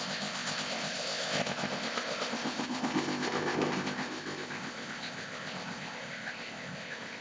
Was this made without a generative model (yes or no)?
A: no